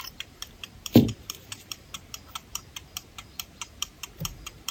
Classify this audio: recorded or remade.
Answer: remade